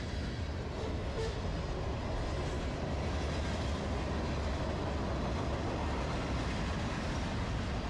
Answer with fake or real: real